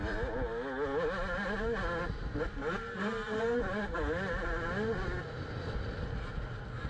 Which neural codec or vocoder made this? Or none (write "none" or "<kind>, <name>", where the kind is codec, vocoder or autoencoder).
none